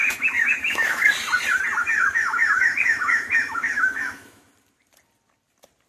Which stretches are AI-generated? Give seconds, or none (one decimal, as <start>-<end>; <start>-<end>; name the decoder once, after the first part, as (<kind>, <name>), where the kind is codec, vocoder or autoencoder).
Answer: 0.0-1.1 (autoencoder, DAC-VAE); 1.8-4.5